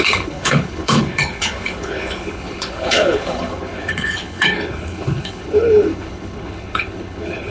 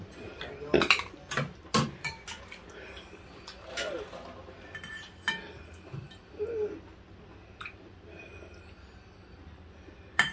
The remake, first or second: first